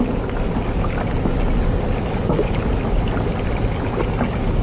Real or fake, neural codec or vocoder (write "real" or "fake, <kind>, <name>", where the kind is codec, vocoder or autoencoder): real